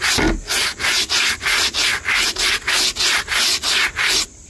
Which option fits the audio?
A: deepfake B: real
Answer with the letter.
B